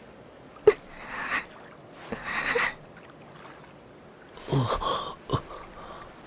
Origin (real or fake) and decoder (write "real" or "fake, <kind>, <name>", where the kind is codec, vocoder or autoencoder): real